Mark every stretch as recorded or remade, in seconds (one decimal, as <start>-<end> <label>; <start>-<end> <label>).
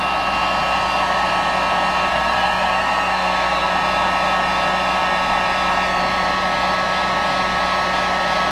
0.0-2.1 recorded; 2.1-3.7 remade; 3.7-8.5 recorded